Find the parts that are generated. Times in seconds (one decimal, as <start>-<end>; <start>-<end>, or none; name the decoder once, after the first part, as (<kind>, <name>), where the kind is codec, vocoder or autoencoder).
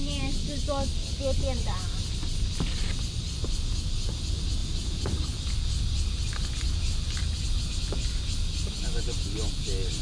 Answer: none